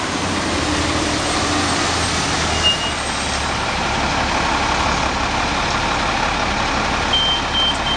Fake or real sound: real